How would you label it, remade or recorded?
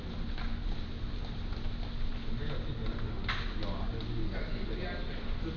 recorded